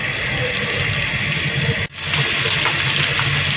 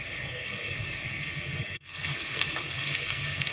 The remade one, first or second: second